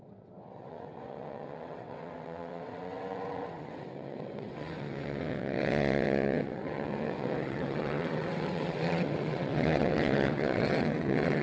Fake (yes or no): yes